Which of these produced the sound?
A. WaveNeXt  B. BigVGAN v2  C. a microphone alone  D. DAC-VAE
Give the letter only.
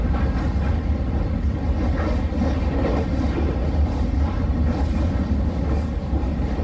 C